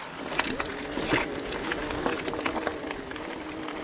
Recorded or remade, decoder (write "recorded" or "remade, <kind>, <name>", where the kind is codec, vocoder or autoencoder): recorded